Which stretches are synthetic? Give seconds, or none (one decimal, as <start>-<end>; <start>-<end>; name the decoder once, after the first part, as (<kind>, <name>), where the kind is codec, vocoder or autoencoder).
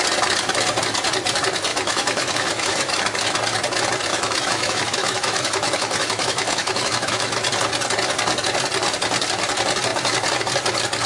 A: 1.7-3.0 (autoencoder, DAC-VAE); 4.1-7.3